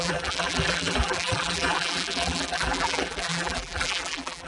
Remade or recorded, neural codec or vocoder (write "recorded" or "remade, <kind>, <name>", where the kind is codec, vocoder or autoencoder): remade, vocoder, BigVGAN v2